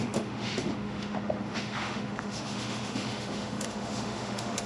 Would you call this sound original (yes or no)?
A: no